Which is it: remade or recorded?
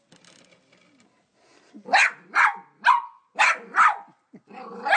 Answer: recorded